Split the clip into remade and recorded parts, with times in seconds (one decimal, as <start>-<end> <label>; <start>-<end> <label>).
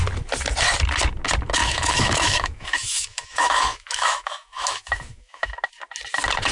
0.0-1.6 recorded; 1.6-5.5 remade; 5.5-6.5 recorded